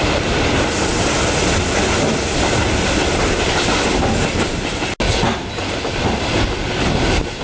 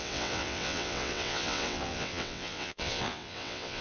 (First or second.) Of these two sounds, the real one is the first